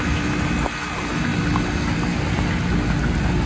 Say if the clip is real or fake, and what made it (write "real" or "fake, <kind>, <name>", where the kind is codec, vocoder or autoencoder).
real